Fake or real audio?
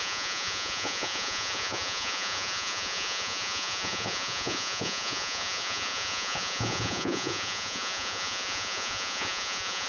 fake